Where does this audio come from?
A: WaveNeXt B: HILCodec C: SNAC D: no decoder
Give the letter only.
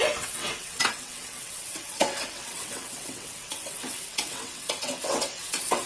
A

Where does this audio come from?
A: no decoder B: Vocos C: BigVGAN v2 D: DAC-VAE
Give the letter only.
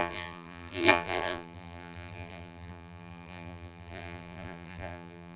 C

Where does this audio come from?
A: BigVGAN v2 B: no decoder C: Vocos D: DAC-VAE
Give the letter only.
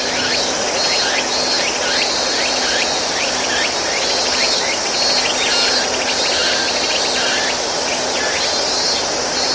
B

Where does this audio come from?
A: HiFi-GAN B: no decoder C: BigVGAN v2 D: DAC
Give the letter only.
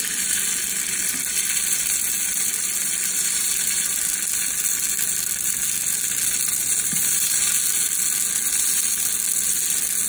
B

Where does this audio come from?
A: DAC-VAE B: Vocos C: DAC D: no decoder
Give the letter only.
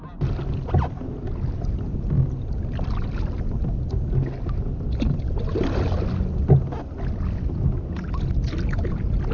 D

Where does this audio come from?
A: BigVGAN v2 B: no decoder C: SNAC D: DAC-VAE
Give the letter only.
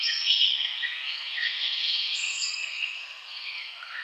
C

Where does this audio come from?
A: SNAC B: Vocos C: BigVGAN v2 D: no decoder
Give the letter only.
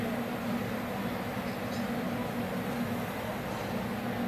D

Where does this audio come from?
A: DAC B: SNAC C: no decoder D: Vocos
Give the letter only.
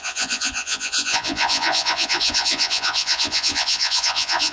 D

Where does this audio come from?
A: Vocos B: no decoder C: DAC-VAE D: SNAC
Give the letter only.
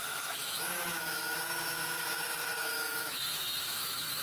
C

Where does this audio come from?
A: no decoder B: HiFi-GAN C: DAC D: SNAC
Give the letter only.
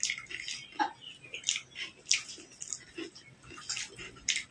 A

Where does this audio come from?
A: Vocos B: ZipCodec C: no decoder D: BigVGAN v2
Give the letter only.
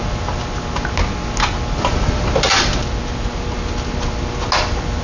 C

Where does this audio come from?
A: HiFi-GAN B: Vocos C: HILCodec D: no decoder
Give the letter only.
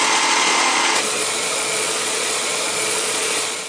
B